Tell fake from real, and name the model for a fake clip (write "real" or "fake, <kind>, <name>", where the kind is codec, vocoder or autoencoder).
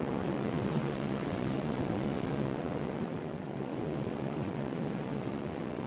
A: fake, vocoder, WaveNeXt